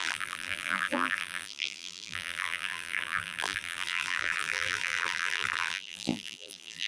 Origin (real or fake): fake